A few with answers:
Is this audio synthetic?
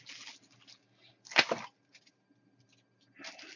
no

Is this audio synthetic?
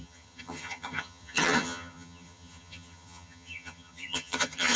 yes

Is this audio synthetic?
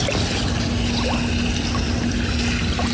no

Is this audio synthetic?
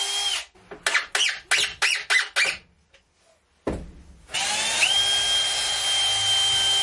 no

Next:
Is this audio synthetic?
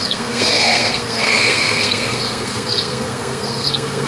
yes